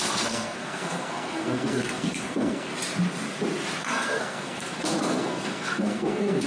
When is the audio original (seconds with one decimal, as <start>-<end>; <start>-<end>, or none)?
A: 2.7-3.8